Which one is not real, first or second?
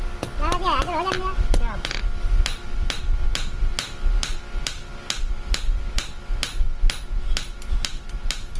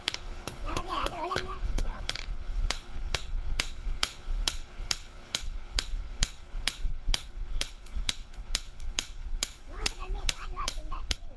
second